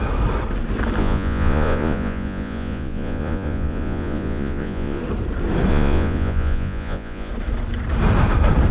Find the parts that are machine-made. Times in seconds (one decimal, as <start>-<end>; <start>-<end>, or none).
1.0-5.0; 5.7-7.3